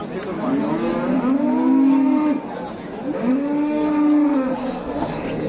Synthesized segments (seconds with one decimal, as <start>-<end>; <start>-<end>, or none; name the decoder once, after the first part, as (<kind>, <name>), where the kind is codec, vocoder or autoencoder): 4.6-5.5 (codec, SNAC)